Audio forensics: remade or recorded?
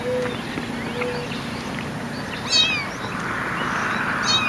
recorded